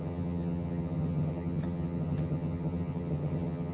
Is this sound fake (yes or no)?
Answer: yes